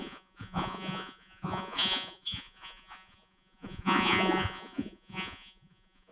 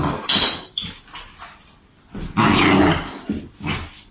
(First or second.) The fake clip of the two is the first